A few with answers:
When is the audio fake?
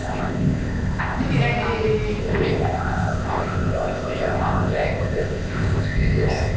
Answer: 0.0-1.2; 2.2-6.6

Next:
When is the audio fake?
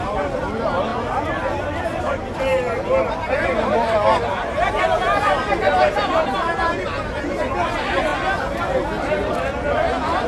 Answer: 2.5-6.1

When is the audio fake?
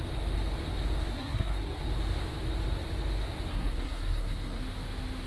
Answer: 1.1-1.8; 3.5-4.6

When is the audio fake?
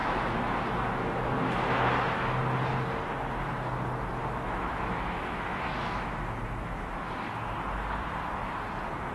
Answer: 0.0-2.4; 4.2-7.1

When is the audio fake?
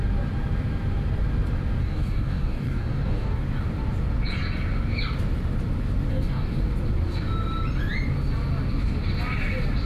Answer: 1.8-3.4; 6.1-6.6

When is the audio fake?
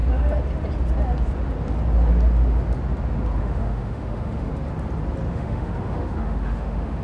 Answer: 3.4-4.5; 5.3-7.0